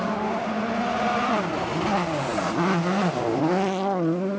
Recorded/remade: recorded